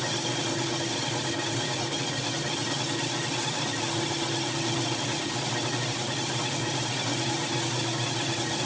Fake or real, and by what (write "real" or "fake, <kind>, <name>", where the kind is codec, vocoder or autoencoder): real